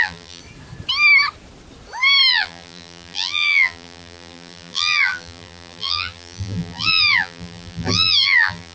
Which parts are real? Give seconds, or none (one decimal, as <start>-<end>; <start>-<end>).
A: 0.4-2.3